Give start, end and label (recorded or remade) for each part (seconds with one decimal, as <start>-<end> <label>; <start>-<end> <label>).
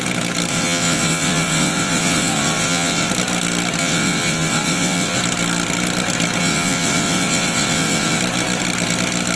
0.0-0.5 recorded; 0.5-3.1 remade; 3.1-3.8 recorded; 3.8-5.2 remade; 5.2-6.4 recorded; 6.4-8.2 remade; 8.2-9.4 recorded